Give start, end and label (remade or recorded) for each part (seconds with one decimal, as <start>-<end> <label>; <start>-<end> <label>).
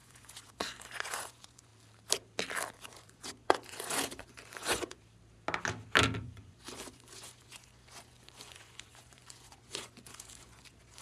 0.0-1.7 remade; 1.7-2.7 recorded; 2.7-5.0 remade; 5.0-6.2 recorded; 6.2-11.0 remade